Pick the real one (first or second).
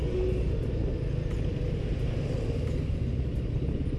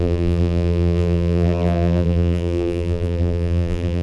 first